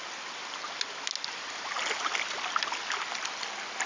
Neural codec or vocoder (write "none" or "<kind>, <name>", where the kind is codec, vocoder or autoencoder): none